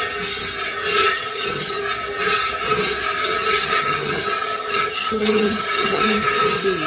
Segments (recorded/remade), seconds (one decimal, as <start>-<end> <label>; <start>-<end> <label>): 0.0-1.0 recorded; 1.0-1.8 remade; 1.8-3.2 recorded; 3.2-6.3 remade; 6.3-6.9 recorded